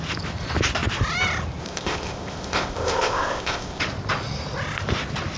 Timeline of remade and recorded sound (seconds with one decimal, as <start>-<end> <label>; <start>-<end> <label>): 0.0-1.6 recorded; 1.6-3.8 remade; 3.8-5.4 recorded